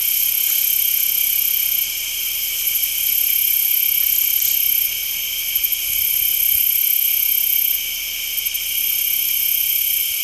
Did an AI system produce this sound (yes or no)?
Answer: no